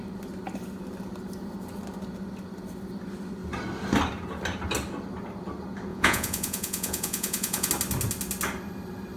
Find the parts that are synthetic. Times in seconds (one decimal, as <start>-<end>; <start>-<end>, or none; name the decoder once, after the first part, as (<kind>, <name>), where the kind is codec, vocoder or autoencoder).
5.9-7.7 (vocoder, Vocos)